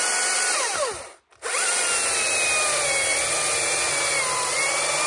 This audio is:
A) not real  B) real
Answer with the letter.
B